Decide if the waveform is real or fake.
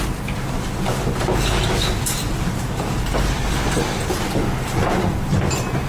real